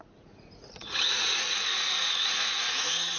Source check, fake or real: fake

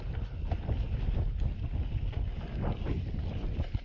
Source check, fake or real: real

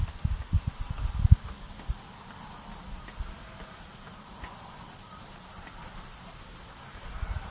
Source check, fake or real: real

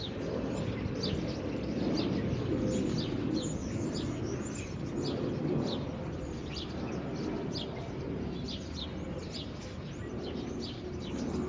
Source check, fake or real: real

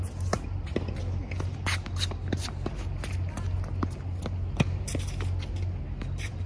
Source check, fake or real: real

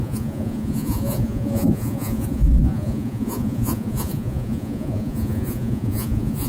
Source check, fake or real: fake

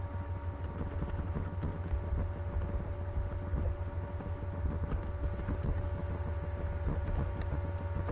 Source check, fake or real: real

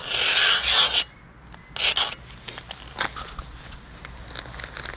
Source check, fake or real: real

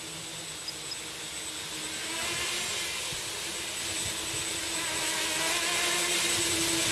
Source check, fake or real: real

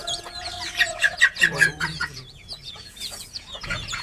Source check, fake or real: fake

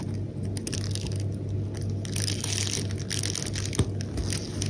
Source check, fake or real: real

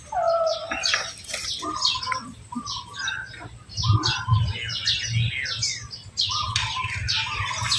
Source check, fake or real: real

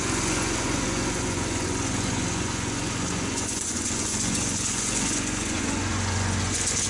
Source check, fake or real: fake